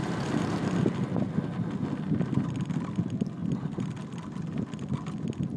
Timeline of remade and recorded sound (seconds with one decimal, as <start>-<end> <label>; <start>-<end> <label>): 0.0-3.4 recorded; 3.4-4.1 remade; 4.1-5.6 recorded